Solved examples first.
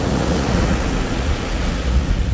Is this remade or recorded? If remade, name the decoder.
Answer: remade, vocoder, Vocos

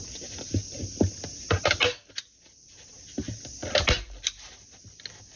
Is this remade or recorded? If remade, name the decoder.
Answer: recorded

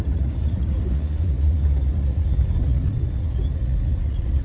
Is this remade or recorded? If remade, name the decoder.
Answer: remade, vocoder, Vocos